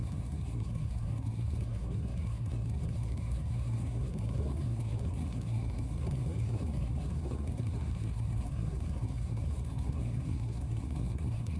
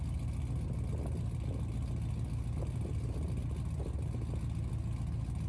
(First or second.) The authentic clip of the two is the second